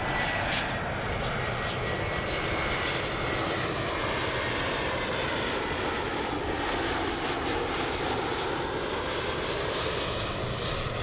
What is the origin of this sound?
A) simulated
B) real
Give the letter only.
B